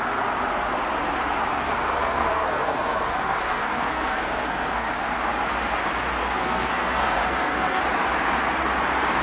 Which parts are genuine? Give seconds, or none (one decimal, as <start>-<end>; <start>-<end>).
0.0-1.5; 4.9-6.2; 7.8-9.2